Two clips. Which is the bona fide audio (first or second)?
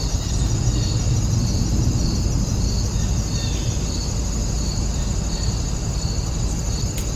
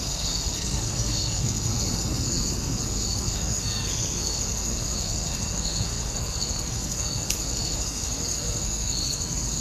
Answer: first